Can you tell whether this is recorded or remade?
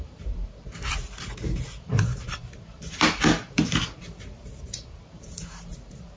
remade